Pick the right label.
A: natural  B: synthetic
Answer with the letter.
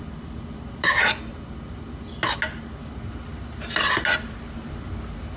A